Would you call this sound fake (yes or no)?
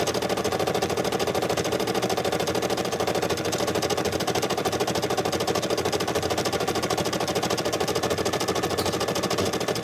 no